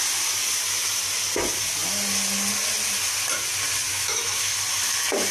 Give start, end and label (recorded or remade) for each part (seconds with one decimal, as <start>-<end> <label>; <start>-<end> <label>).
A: 0.0-3.9 recorded; 3.9-4.5 remade; 4.5-5.3 recorded